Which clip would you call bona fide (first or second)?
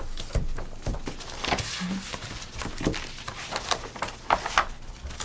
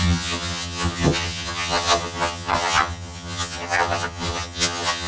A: first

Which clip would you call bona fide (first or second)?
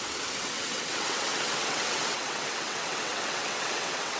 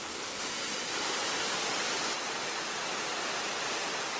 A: second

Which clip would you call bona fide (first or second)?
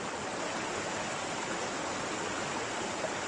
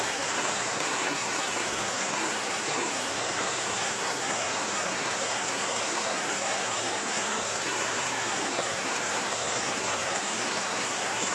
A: first